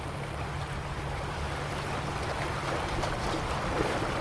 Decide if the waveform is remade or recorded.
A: recorded